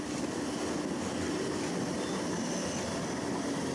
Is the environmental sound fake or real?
real